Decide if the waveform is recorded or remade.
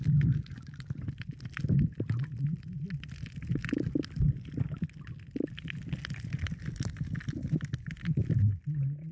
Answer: recorded